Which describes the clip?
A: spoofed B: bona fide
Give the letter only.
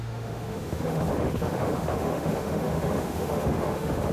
A